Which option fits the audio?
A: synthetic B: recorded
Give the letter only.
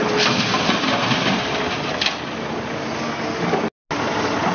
B